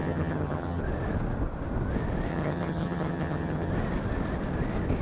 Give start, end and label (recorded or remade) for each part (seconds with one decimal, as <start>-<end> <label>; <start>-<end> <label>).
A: 0.0-0.8 remade; 0.8-2.3 recorded; 2.3-3.7 remade; 3.7-5.0 recorded